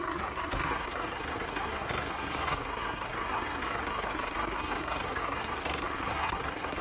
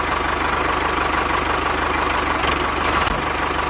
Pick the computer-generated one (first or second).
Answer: first